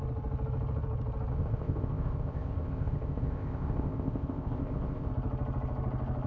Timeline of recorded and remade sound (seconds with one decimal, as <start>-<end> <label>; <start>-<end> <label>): 0.0-1.3 recorded; 1.3-5.1 remade; 5.1-6.3 recorded